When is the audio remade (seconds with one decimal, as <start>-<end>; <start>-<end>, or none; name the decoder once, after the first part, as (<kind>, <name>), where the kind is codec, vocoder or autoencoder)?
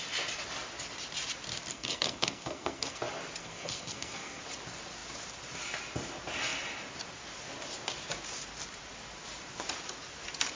1.7-3.0 (codec, SNAC); 3.4-4.4